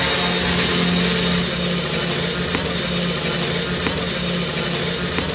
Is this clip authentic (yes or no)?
yes